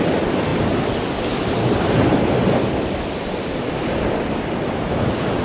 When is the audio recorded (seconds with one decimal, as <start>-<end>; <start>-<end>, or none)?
0.0-5.4